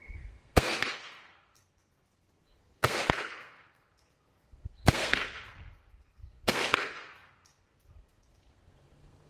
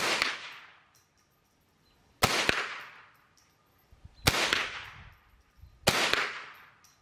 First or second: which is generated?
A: first